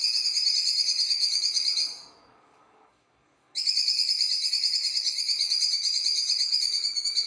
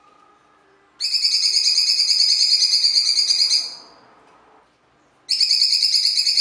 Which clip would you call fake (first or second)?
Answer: first